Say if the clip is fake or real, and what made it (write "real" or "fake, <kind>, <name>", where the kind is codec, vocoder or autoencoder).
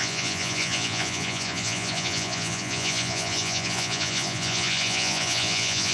fake, vocoder, Vocos